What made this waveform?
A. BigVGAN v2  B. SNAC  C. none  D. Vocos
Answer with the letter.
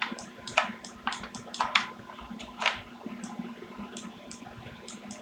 A